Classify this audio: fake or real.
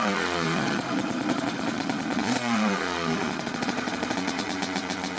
fake